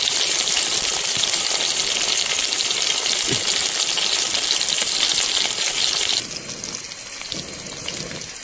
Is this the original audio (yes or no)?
yes